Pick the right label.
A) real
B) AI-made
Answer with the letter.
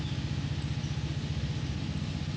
A